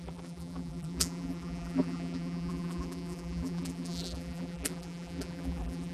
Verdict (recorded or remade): remade